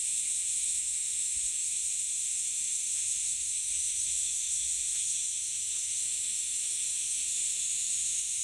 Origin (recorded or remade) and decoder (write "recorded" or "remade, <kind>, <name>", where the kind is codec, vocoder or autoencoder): remade, autoencoder, DAC-VAE